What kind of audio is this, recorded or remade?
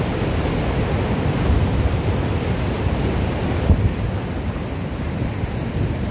recorded